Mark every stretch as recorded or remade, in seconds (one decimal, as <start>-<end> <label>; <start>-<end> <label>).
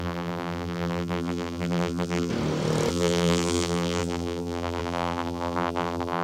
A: 0.0-2.3 remade; 2.3-2.9 recorded; 2.9-6.2 remade